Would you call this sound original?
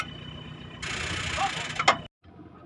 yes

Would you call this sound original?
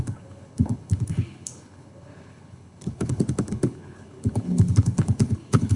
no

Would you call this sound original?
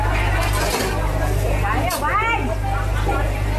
yes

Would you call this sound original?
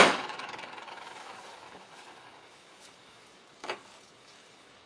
no